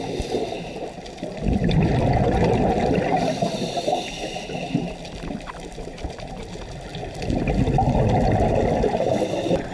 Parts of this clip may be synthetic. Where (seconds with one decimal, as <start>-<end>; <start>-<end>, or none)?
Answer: 0.0-6.9; 7.7-9.7